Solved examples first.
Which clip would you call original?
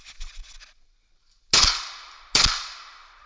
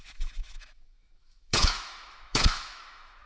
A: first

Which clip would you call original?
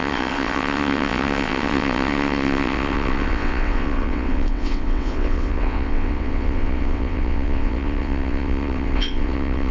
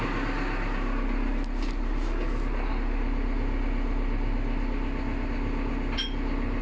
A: second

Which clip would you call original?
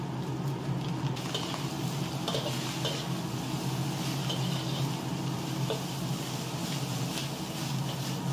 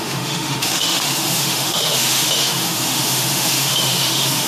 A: first